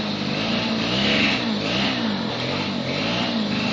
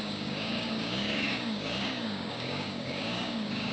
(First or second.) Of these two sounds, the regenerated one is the second